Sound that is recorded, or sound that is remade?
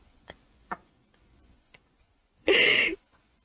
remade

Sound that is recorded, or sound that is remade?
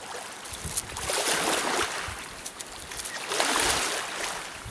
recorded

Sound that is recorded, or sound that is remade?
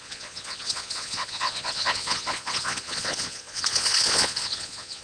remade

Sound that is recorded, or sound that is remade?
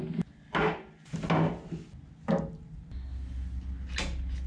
recorded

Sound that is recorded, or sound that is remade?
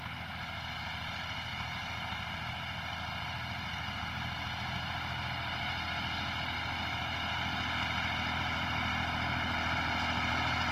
recorded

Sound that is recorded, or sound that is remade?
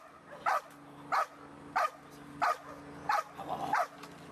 recorded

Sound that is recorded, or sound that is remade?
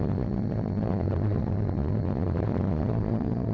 remade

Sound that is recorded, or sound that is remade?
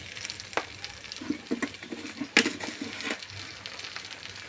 recorded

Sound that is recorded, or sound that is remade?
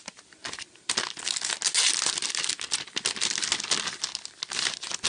recorded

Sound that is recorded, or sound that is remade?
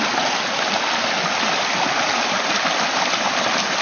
recorded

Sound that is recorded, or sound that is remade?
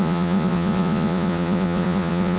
remade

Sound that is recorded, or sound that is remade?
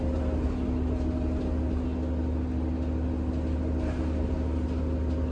recorded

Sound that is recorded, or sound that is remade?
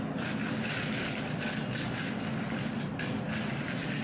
recorded